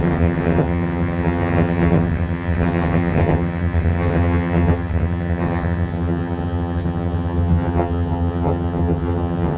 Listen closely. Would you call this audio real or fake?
fake